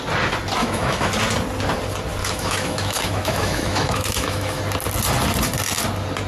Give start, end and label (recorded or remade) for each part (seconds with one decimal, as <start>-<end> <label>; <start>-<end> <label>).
0.0-0.6 recorded; 0.6-1.1 remade; 1.1-2.2 recorded; 2.2-4.6 remade; 4.6-6.3 recorded